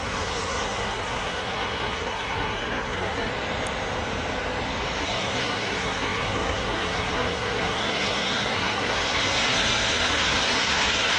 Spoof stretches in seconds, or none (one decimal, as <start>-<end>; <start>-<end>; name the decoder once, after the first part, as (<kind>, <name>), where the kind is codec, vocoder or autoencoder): 0.0-3.3 (codec, SNAC); 5.0-11.2